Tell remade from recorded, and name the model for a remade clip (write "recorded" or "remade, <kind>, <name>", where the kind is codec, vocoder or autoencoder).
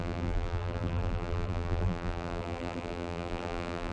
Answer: remade, vocoder, BigVGAN v2